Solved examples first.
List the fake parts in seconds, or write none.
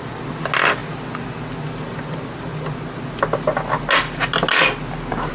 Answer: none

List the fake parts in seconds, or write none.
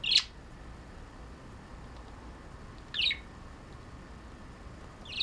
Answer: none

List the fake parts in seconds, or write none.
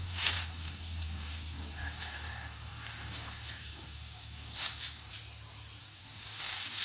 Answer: 0.0-5.1 (codec, DAC); 5.8-6.8